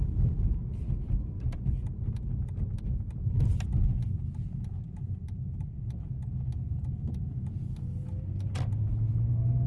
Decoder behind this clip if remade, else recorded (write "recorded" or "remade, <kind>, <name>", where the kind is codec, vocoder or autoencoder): recorded